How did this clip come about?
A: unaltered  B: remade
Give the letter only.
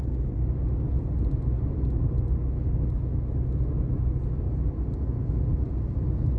A